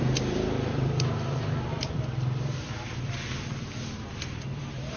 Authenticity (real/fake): fake